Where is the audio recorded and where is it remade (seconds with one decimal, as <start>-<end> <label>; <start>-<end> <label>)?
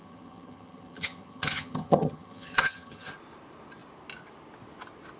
0.0-3.1 remade; 3.1-5.2 recorded